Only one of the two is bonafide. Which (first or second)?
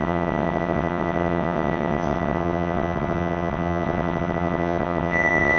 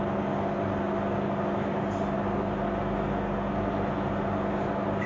second